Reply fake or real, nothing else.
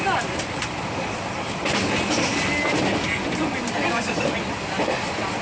real